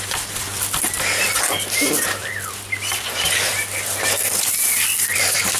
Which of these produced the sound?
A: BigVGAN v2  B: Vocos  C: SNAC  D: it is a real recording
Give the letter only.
A